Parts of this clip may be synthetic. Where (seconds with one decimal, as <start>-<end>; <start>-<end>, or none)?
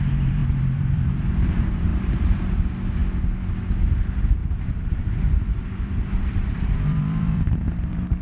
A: 0.0-3.0; 3.9-8.2